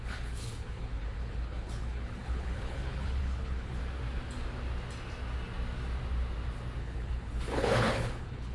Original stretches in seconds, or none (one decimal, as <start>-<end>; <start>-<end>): 3.8-6.8